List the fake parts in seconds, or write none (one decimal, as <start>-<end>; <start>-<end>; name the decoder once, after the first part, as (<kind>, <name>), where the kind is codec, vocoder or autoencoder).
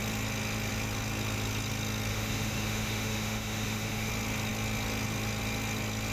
2.1-4.1 (autoencoder, DAC-VAE)